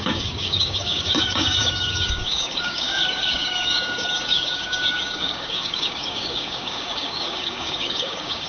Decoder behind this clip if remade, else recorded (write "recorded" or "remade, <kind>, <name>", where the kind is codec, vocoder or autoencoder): remade, codec, DAC